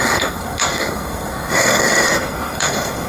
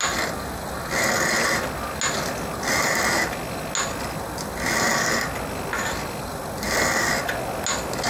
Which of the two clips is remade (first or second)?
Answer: first